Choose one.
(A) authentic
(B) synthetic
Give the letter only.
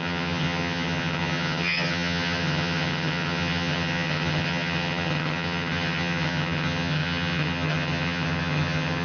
B